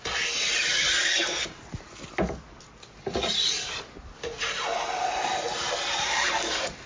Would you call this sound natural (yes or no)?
yes